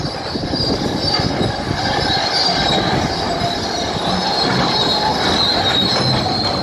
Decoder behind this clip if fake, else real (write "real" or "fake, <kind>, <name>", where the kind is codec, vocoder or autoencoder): real